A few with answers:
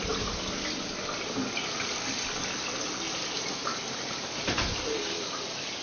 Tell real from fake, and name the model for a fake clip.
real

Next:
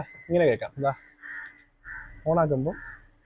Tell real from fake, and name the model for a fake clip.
real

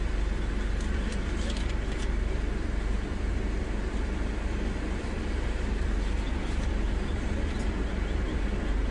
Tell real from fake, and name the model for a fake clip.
real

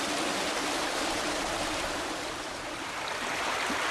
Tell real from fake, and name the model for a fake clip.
real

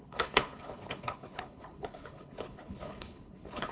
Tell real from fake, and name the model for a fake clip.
fake, codec, HILCodec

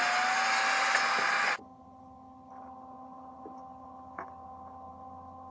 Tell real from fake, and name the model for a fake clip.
real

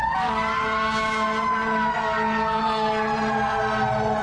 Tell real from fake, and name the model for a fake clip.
real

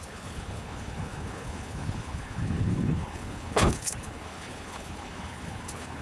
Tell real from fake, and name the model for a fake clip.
fake, codec, HILCodec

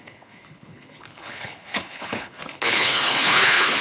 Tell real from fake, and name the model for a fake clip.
fake, codec, HILCodec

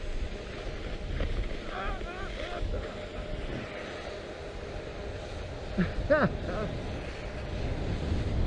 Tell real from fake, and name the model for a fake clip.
real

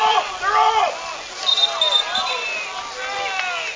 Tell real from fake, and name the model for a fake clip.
real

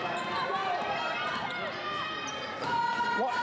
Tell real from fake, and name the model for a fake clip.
real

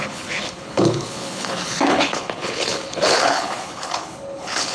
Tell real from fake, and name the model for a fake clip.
fake, codec, HILCodec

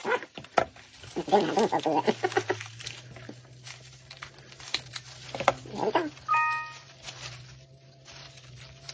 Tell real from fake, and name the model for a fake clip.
real